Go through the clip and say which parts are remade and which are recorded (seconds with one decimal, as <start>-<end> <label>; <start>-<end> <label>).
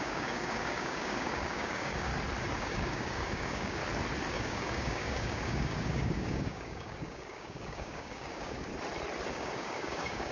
0.0-2.1 remade; 2.1-2.6 recorded; 2.6-3.8 remade; 3.8-4.3 recorded; 4.3-8.7 remade; 8.7-9.3 recorded; 9.3-10.3 remade